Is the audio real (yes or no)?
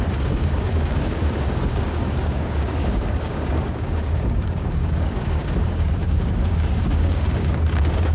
no